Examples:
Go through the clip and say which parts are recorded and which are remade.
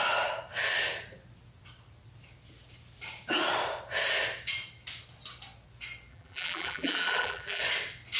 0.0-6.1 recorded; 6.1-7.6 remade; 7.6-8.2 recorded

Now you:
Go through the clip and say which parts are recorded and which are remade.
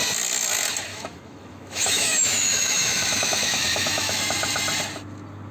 0.0-0.9 recorded; 0.9-4.2 remade; 4.2-5.5 recorded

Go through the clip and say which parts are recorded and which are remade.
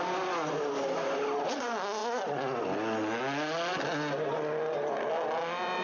0.0-5.8 recorded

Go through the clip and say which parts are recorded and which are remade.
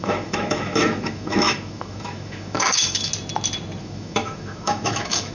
0.0-3.1 remade; 3.1-3.8 recorded; 3.8-5.3 remade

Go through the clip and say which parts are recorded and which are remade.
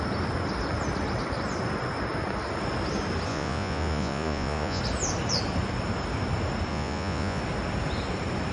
0.0-3.3 recorded; 3.3-4.8 remade; 4.8-6.7 recorded; 6.7-7.4 remade; 7.4-8.5 recorded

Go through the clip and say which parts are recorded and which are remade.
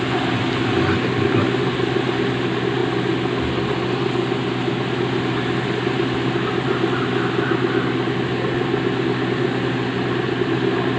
0.0-11.0 recorded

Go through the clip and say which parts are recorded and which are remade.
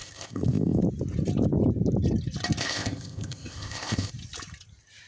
0.0-0.8 remade; 0.8-2.6 recorded; 2.6-4.1 remade; 4.1-5.1 recorded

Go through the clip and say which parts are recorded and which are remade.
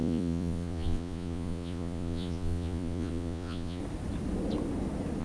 0.0-3.8 remade; 3.8-5.2 recorded